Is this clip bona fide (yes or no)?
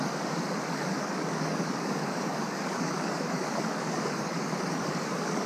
no